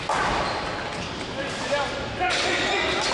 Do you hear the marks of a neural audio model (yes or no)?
no